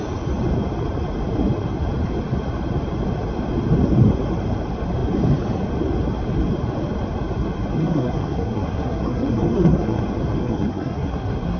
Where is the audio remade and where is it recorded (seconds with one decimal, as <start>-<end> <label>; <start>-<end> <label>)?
0.0-7.8 recorded; 7.8-10.0 remade; 10.0-10.4 recorded; 10.4-11.6 remade